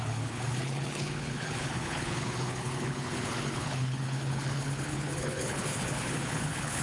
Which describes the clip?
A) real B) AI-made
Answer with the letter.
B